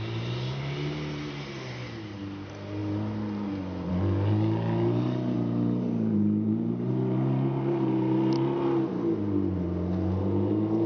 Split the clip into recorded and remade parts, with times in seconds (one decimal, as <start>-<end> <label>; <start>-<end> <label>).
0.0-10.9 recorded